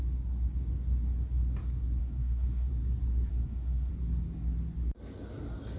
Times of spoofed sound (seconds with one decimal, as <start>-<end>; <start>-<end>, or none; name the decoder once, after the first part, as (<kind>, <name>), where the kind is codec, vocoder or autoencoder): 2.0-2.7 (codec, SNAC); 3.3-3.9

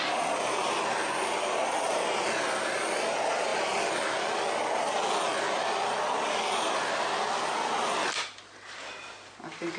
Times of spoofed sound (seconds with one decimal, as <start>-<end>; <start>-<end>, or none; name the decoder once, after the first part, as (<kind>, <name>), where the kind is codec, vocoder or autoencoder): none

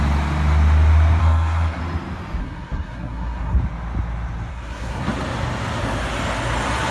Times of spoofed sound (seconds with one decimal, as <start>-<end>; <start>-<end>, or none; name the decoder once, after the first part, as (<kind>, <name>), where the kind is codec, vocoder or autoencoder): 1.2-1.8 (codec, SNAC); 2.4-3.6; 4.5-5.1